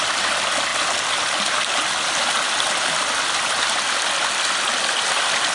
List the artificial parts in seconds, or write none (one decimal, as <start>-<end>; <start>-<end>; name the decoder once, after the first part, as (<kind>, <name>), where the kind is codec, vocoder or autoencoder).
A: none